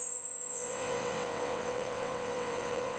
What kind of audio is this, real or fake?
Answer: fake